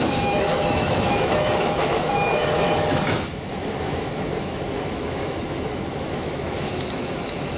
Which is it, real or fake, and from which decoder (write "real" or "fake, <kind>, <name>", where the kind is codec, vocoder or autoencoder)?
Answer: fake, autoencoder, DAC-VAE